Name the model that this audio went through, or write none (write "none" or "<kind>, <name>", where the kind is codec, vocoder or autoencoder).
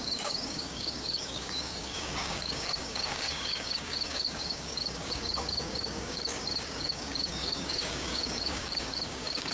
codec, DAC